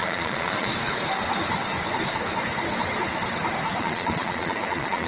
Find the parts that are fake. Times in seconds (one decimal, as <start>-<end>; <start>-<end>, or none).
0.0-0.7; 3.8-5.1